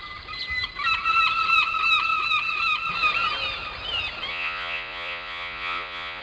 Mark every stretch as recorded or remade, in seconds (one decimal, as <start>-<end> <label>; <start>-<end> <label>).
0.0-4.3 recorded; 4.3-6.2 remade